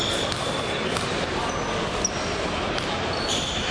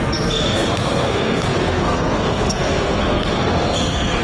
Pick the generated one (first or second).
second